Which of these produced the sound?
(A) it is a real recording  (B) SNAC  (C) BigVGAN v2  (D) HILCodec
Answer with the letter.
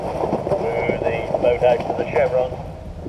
A